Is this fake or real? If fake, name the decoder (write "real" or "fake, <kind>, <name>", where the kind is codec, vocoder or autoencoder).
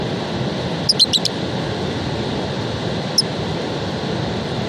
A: real